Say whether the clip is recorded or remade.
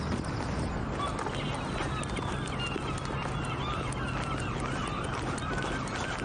recorded